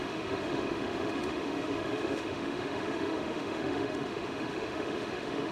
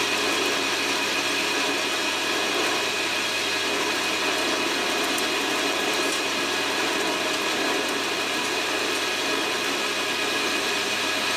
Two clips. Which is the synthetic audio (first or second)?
first